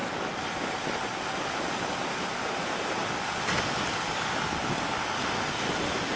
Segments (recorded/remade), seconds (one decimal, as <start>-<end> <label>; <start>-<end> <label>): 0.0-0.8 remade; 0.8-3.0 recorded; 3.0-4.6 remade; 4.6-6.2 recorded